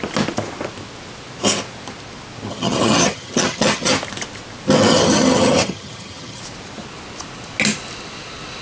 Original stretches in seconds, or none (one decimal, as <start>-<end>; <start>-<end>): 0.0-2.5; 3.9-4.9; 6.4-8.6